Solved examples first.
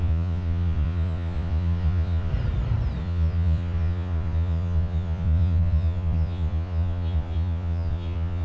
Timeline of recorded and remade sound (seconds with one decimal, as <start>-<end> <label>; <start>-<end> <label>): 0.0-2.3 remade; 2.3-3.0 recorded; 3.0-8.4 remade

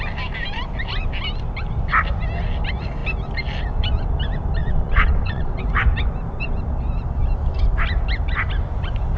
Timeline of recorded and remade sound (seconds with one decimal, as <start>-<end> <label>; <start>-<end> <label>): 0.0-4.6 recorded; 4.6-5.6 remade; 5.6-9.2 recorded

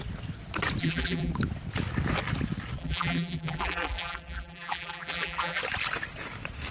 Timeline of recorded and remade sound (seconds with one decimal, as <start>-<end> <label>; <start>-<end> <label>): 0.0-0.8 recorded; 0.8-1.3 remade; 1.3-2.8 recorded; 2.8-5.6 remade; 5.6-6.7 recorded

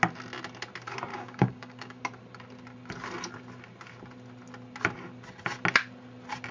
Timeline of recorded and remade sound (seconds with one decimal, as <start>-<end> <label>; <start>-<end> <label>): 0.0-1.1 recorded; 1.1-2.0 remade; 2.0-6.5 recorded

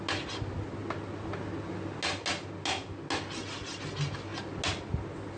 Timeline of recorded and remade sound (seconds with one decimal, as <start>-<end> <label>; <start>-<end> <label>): 0.0-5.4 recorded

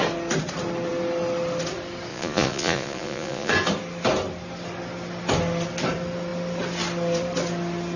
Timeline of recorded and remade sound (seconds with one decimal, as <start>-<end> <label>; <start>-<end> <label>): 0.0-2.1 recorded; 2.1-3.5 remade; 3.5-8.0 recorded